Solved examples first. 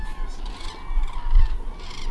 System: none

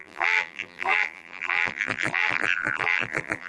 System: vocoder, BigVGAN v2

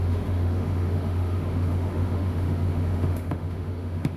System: autoencoder, DAC-VAE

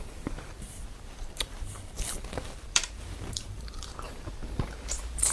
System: vocoder, BigVGAN v2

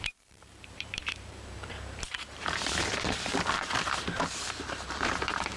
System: vocoder, BigVGAN v2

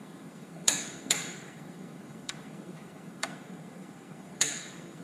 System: codec, SNAC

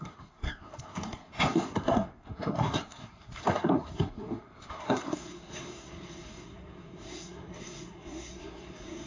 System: codec, SNAC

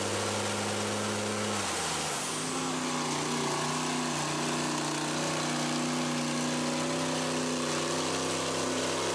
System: none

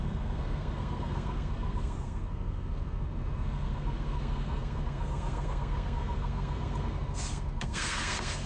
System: codec, SNAC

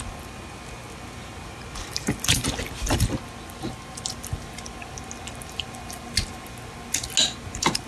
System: none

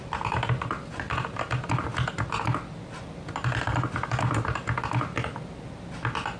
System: none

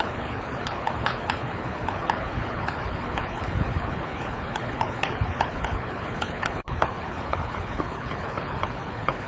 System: codec, HILCodec